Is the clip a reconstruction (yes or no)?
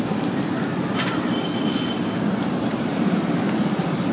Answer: no